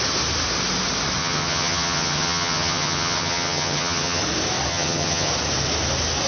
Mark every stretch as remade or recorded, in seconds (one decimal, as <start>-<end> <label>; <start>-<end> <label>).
0.0-1.2 recorded; 1.2-4.2 remade; 4.2-4.7 recorded; 4.7-5.3 remade; 5.3-6.3 recorded

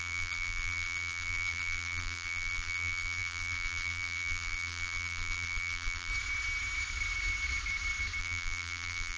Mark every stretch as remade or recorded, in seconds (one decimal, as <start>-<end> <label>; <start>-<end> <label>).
0.0-6.1 remade; 6.1-8.2 recorded; 8.2-9.2 remade

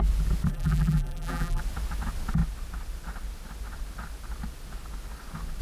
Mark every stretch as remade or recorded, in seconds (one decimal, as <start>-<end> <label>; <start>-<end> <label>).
0.0-0.5 recorded; 0.5-1.6 remade; 1.6-5.6 recorded

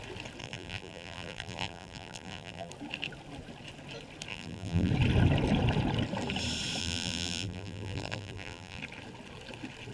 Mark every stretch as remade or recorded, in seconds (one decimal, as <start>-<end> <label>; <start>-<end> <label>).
0.0-0.4 recorded; 0.4-2.7 remade; 2.7-4.3 recorded; 4.3-4.9 remade; 4.9-6.8 recorded; 6.8-8.8 remade; 8.8-9.9 recorded

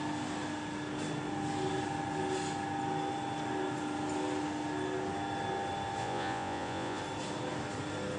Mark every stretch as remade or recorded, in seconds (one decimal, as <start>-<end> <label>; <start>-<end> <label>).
0.0-6.0 recorded; 6.0-7.0 remade; 7.0-8.2 recorded

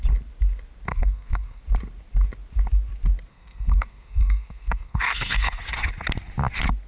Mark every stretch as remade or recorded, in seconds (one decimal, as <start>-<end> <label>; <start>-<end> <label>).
0.0-0.9 recorded; 0.9-1.6 remade; 1.6-3.3 recorded; 3.3-5.6 remade; 5.6-6.9 recorded

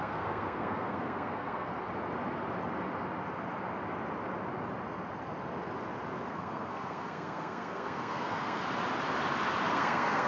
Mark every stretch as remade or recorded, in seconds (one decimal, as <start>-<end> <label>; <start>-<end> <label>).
0.0-1.7 remade; 1.7-6.3 recorded; 6.3-8.6 remade; 8.6-9.7 recorded; 9.7-10.3 remade